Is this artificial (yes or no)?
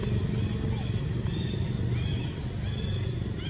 no